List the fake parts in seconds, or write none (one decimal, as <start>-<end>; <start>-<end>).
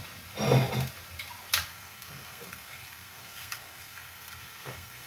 1.7-5.1